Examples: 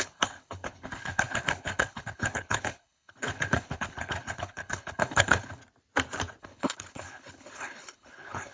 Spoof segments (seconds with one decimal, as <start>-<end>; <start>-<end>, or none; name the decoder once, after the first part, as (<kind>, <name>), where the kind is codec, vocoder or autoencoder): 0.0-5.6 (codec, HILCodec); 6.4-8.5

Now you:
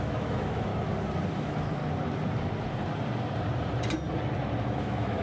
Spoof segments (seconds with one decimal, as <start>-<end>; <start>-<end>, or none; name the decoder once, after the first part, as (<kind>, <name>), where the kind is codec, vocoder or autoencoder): 0.0-0.7 (autoencoder, DAC-VAE); 1.3-1.8; 4.6-5.2

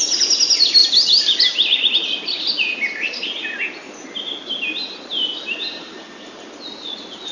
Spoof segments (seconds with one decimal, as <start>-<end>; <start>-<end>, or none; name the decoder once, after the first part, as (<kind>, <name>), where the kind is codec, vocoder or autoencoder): none